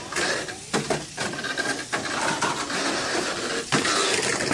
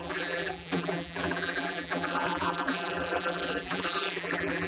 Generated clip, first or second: second